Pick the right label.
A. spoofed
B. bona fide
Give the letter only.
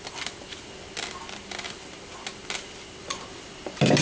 B